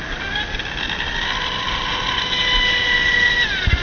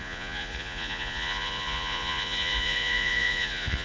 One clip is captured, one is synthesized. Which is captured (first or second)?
first